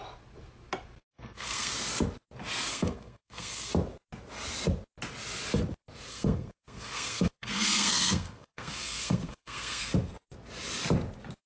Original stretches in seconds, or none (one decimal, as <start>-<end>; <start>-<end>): 0.0-1.0; 1.7-2.7; 3.7-6.1; 9.9-11.5